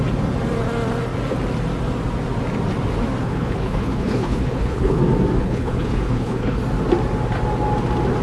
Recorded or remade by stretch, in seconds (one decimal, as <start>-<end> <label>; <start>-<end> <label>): 0.0-3.2 recorded; 3.2-5.0 remade; 5.0-5.4 recorded; 5.4-6.6 remade; 6.6-8.2 recorded